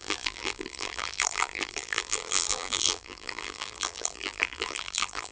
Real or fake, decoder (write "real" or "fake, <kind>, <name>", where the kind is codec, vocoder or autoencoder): fake, vocoder, BigVGAN v2